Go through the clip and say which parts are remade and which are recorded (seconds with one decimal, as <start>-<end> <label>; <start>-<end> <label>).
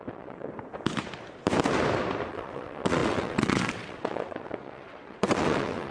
0.0-0.5 remade; 0.5-2.3 recorded; 2.3-5.9 remade